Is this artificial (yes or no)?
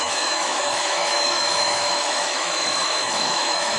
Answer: yes